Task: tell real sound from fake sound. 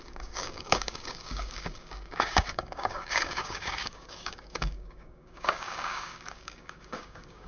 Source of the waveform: fake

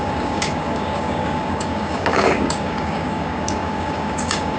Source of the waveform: fake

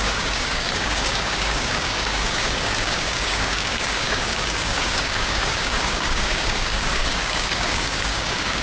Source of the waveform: fake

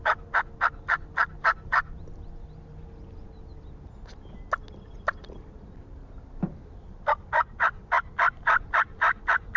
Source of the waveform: real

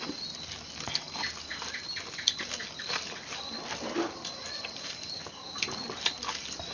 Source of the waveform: real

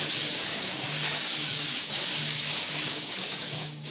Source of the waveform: fake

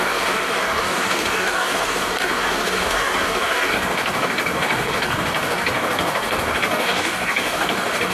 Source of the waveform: fake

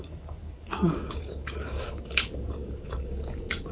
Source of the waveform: fake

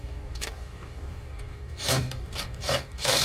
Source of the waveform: fake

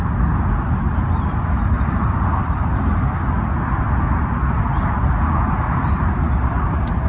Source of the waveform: real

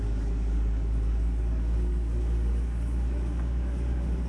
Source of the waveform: fake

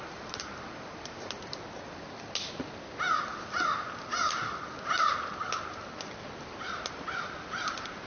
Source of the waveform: real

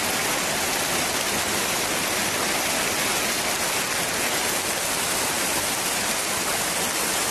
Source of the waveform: real